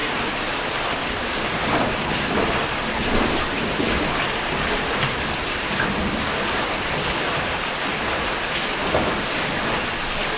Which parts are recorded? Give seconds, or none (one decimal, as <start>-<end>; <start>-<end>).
0.0-0.9; 2.6-7.2; 7.9-9.9